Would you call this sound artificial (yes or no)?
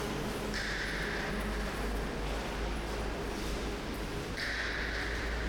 no